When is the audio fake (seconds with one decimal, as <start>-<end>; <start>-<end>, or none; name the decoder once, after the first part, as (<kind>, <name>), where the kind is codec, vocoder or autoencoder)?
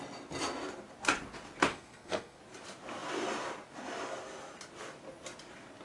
1.7-2.4 (codec, SNAC)